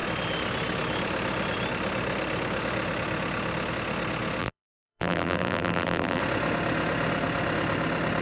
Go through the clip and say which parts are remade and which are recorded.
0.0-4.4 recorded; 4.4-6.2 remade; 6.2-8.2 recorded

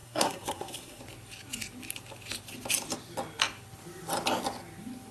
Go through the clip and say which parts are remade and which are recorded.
0.0-1.0 remade; 1.0-5.1 recorded

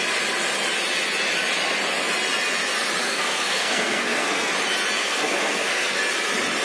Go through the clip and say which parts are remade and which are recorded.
0.0-3.0 recorded; 3.0-4.5 remade; 4.5-5.0 recorded; 5.0-6.0 remade; 6.0-6.6 recorded

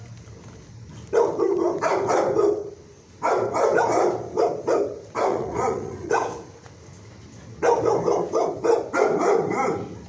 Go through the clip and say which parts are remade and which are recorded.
0.0-5.3 recorded; 5.3-6.5 remade; 6.5-10.1 recorded

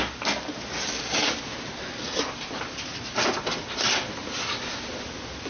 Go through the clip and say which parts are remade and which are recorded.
0.0-5.5 recorded

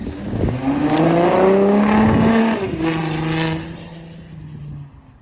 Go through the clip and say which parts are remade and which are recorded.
0.0-0.5 remade; 0.5-1.6 recorded; 1.6-2.4 remade; 2.4-5.2 recorded